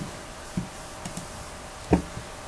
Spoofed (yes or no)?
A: no